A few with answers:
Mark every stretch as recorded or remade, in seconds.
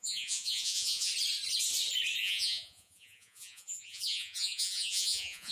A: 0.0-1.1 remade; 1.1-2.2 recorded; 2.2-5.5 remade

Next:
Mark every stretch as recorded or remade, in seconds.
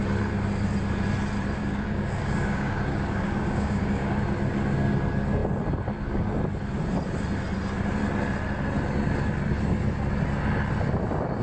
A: 0.0-1.6 recorded; 1.6-4.1 remade; 4.1-11.4 recorded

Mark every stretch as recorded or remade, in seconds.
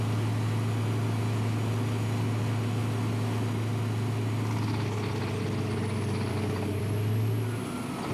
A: 0.0-6.3 recorded; 6.3-6.8 remade; 6.8-8.1 recorded